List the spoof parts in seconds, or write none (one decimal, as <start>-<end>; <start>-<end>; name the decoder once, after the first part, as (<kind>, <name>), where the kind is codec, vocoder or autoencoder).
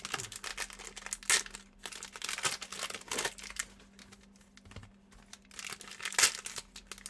none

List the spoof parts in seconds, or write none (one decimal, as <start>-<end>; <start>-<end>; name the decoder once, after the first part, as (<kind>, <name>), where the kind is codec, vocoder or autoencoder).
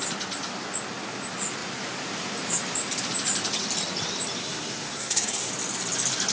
4.4-5.5 (codec, SNAC)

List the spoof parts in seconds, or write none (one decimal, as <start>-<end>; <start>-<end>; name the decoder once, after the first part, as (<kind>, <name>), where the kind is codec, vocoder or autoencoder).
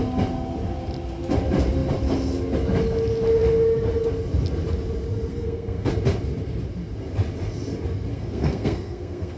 5.3-5.9 (codec, SNAC); 8.1-9.4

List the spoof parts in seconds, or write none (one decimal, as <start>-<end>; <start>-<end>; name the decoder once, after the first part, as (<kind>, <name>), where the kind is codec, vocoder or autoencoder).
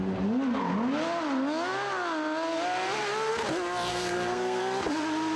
3.9-4.6 (codec, SNAC)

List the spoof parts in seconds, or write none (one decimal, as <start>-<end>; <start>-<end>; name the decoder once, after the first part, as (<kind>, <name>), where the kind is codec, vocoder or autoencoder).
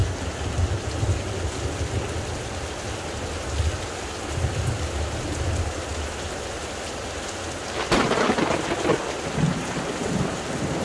none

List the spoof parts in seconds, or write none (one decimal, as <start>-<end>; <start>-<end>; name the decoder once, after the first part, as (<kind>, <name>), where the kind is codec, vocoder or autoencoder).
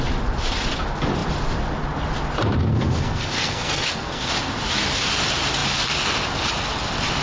2.7-4.3 (codec, SNAC)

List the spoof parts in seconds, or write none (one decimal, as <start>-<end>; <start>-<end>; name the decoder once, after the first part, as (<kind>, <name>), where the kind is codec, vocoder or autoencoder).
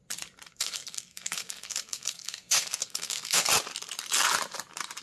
0.5-3.5 (codec, SNAC)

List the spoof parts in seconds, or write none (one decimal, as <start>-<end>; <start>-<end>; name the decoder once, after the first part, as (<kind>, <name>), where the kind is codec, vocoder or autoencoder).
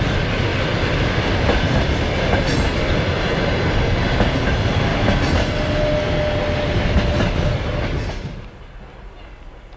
none